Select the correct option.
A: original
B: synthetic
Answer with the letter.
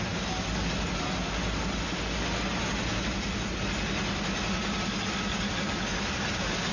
A